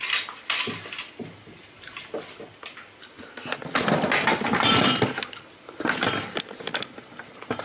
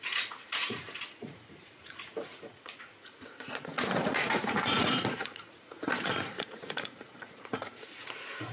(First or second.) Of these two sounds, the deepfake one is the second